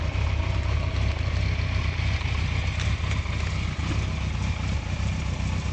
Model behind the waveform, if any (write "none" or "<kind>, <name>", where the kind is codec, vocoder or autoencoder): none